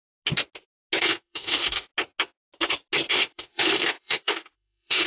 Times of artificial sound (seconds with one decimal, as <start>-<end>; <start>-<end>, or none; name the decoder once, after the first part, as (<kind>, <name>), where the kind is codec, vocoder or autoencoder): 1.0-1.9 (autoencoder, DAC-VAE); 3.1-5.1